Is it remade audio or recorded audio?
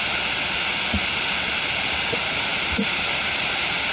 recorded